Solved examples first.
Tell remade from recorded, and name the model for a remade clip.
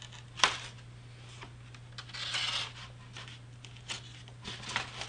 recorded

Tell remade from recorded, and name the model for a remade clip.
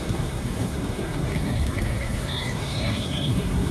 remade, codec, SNAC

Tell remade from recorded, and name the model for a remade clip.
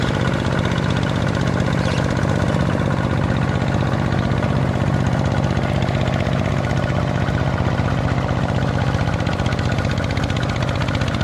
recorded